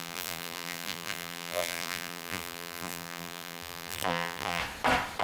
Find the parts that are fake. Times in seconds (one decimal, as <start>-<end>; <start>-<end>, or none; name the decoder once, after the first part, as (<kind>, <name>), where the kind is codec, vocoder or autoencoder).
0.0-4.6 (vocoder, BigVGAN v2)